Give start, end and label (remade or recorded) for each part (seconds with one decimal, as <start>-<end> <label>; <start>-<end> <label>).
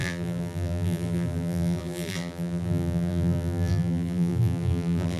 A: 0.0-5.2 remade